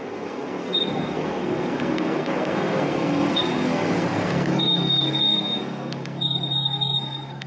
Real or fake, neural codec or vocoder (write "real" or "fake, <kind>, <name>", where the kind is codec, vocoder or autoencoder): fake, codec, SNAC